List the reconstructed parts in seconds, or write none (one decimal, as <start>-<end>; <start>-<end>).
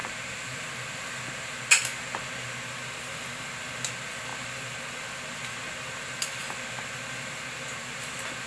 0.0-0.7